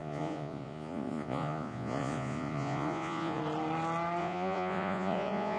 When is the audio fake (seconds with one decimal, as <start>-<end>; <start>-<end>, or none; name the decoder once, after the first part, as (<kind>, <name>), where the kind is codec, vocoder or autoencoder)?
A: 0.0-3.4 (vocoder, Vocos); 4.2-5.6